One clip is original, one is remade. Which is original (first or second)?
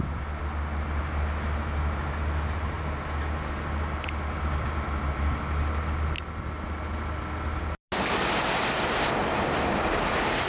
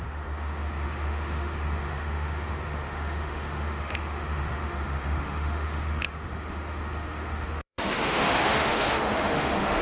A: first